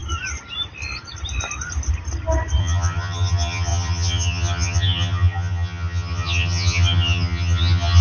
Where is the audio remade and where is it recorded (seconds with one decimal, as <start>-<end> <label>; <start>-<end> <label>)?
0.0-2.6 recorded; 2.6-8.0 remade